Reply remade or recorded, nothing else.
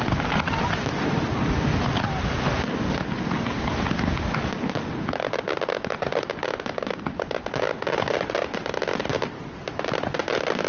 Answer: recorded